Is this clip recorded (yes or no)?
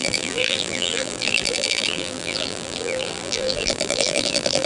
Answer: no